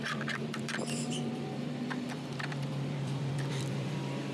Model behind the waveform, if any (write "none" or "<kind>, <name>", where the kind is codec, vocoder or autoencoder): vocoder, BigVGAN v2